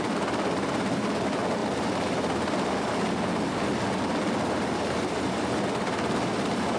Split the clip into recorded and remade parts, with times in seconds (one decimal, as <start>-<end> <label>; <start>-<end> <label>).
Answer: 0.0-6.8 recorded